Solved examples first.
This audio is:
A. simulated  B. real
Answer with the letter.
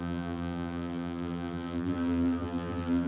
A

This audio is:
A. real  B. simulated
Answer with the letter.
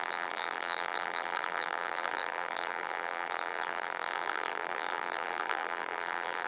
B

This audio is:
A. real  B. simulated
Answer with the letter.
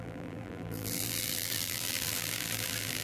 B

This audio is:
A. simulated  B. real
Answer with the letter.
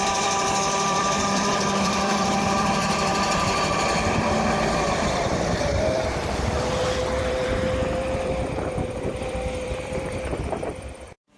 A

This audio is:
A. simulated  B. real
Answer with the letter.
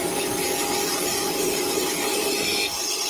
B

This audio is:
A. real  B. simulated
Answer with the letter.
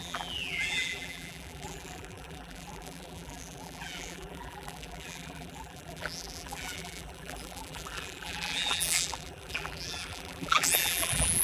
B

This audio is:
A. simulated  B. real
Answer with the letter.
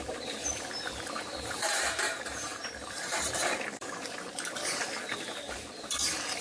A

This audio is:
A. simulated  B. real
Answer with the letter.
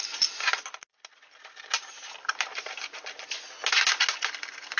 B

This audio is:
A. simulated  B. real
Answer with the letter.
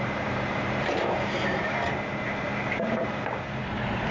A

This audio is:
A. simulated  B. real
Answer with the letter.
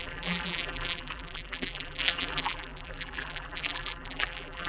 A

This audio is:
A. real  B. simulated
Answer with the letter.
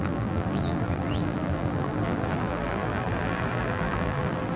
B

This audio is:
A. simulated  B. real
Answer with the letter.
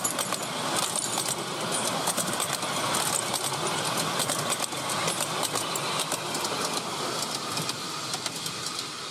B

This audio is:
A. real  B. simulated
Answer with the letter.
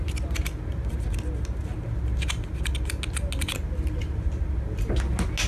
A